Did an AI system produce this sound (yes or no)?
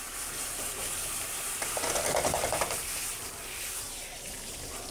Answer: no